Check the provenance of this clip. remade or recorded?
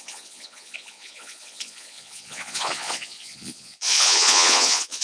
remade